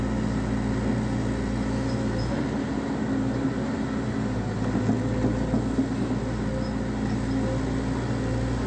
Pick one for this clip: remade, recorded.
recorded